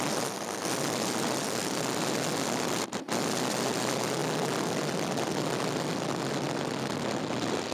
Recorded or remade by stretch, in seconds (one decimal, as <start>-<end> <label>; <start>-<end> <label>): 0.0-7.7 recorded